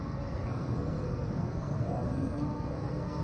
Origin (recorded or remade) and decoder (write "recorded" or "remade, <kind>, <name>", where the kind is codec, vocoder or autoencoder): remade, codec, SNAC